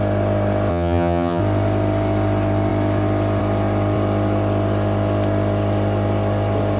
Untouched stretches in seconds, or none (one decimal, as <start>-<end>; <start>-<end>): 0.0-0.7; 1.4-6.8